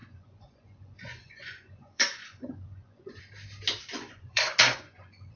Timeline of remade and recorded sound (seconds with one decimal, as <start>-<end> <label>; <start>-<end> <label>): 0.0-3.2 remade; 3.2-3.9 recorded; 3.9-5.4 remade